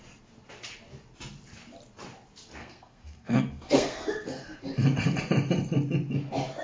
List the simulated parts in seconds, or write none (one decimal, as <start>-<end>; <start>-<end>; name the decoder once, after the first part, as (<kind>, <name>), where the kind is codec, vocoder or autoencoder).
2.6-4.6 (codec, SNAC)

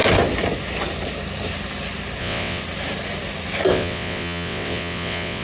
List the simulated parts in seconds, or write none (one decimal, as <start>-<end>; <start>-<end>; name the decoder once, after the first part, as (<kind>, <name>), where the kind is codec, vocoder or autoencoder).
2.2-2.6 (vocoder, WaveNeXt); 3.7-5.4

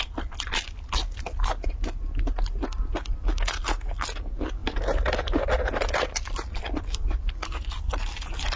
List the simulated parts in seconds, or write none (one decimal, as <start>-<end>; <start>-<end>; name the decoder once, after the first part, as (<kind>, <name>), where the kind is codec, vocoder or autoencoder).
none

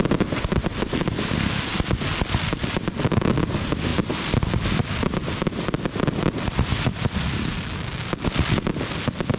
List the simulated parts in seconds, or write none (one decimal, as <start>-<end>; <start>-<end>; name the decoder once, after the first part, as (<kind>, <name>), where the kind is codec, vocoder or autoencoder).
none

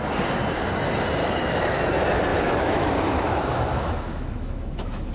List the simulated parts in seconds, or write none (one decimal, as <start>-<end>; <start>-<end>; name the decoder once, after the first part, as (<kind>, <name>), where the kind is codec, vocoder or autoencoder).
1.2-1.8 (autoencoder, DAC-VAE); 2.3-5.1

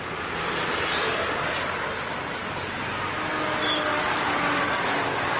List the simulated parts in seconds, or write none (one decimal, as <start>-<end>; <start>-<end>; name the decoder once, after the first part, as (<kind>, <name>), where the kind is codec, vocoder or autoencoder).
2.1-2.8 (codec, DAC); 3.9-5.4

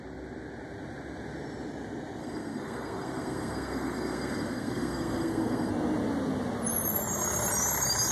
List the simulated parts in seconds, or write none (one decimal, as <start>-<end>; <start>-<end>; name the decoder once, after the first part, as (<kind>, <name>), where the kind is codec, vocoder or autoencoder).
2.2-5.7 (codec, SNAC)

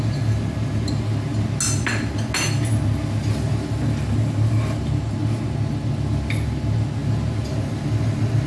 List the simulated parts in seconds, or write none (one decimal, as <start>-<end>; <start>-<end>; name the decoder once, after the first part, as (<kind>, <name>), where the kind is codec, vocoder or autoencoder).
none